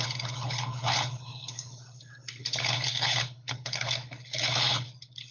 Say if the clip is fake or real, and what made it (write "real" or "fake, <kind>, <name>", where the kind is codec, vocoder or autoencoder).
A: fake, codec, HILCodec